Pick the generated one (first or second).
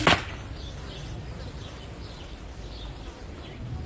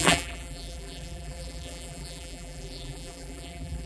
second